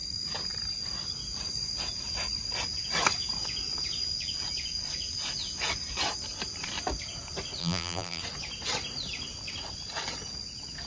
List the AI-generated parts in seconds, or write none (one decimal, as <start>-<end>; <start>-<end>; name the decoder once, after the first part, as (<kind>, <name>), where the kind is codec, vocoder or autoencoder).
7.6-8.2 (vocoder, BigVGAN v2)